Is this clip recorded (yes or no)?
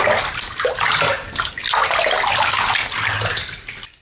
yes